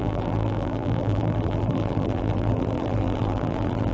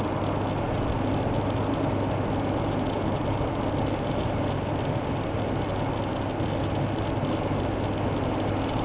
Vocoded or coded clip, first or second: first